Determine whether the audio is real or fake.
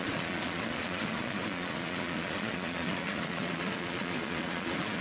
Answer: fake